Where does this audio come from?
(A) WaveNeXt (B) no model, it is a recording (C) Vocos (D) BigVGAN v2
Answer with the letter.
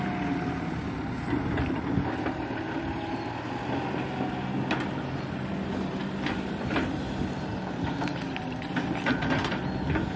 B